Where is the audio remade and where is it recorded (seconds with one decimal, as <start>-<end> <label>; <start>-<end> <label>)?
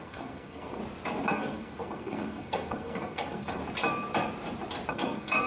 0.0-0.8 remade; 0.8-1.3 recorded; 1.3-3.6 remade; 3.6-4.9 recorded; 4.9-5.5 remade